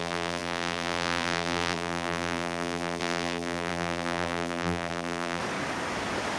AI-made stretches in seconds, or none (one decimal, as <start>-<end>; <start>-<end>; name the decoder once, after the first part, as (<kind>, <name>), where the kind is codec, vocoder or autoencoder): 0.0-5.4 (vocoder, BigVGAN v2)